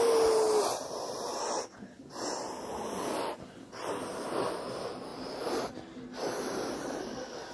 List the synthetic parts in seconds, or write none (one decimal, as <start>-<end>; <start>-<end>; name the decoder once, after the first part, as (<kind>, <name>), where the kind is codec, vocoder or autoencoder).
5.1-7.0 (vocoder, BigVGAN v2)